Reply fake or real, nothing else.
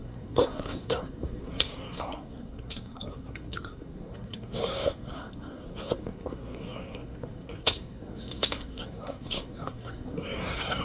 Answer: fake